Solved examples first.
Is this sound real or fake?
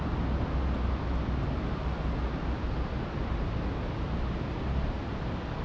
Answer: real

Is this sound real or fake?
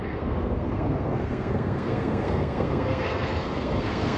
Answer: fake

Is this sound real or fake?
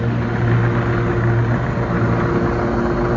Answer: real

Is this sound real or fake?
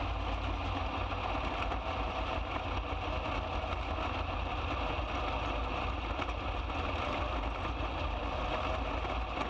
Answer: real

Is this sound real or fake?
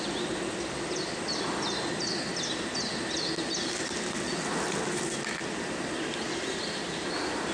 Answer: real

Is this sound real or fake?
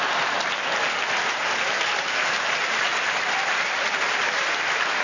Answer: real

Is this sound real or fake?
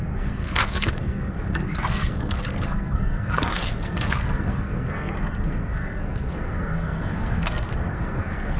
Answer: fake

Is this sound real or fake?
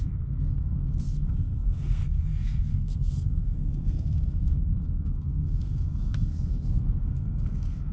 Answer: fake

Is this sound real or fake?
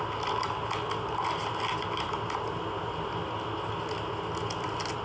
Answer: real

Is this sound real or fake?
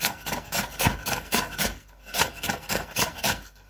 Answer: fake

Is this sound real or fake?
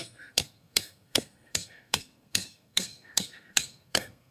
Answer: fake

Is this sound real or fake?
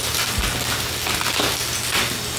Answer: real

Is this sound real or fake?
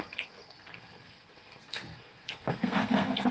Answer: fake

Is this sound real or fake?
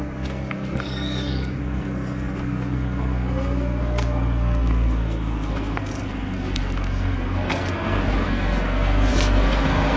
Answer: fake